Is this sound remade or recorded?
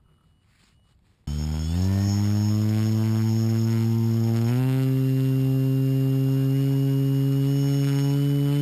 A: recorded